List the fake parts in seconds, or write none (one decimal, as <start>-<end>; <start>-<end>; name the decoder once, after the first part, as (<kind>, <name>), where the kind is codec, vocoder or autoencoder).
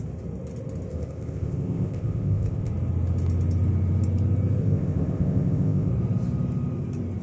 0.9-2.7 (codec, ZipCodec); 4.6-5.9